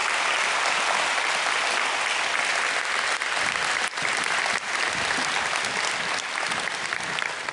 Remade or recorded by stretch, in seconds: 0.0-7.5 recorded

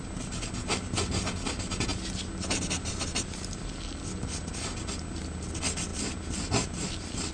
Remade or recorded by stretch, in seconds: 0.0-7.3 recorded

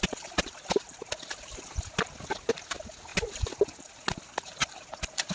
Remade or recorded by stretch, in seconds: 0.0-5.3 recorded

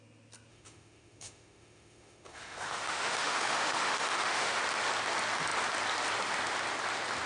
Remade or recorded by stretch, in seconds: 0.0-0.5 recorded; 0.5-4.6 remade; 4.6-7.3 recorded

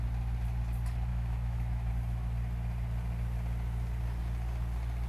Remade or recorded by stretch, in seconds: 0.0-1.1 recorded; 1.1-1.9 remade; 1.9-5.1 recorded

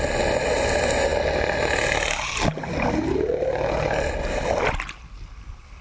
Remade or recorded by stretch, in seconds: 0.0-5.8 recorded

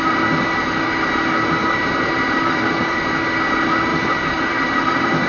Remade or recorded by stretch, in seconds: 0.0-1.6 recorded; 1.6-3.0 remade; 3.0-3.9 recorded; 3.9-5.3 remade

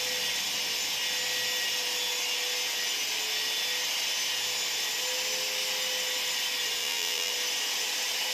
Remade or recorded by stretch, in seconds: 0.0-6.8 recorded; 6.8-7.3 remade; 7.3-8.3 recorded